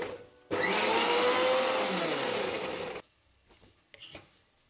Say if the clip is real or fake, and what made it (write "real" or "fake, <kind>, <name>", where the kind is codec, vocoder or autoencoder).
real